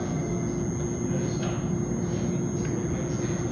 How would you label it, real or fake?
real